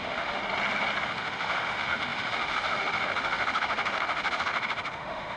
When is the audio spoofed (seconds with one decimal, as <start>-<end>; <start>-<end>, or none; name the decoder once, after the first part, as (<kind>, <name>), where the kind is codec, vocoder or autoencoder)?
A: 0.0-0.4 (autoencoder, DAC-VAE); 1.0-5.4